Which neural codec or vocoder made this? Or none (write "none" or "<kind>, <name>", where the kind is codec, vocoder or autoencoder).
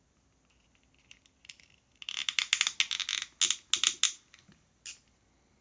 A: none